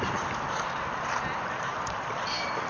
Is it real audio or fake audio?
real